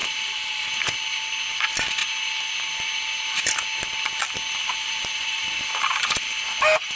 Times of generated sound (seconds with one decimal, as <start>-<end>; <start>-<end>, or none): 0.0-0.7; 4.6-6.6